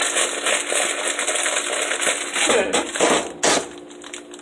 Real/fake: real